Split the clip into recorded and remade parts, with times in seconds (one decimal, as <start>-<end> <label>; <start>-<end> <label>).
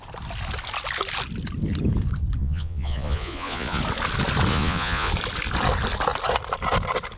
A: 0.0-2.4 recorded; 2.4-3.8 remade; 3.8-4.5 recorded; 4.5-5.1 remade; 5.1-7.2 recorded